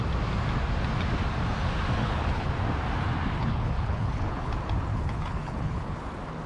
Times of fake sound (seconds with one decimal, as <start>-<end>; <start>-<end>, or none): 2.0-2.5; 3.4-4.5; 4.9-6.0